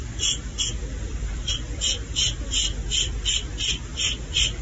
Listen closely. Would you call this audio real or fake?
fake